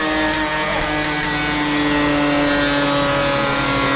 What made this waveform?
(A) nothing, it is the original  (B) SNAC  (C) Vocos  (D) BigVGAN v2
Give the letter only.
A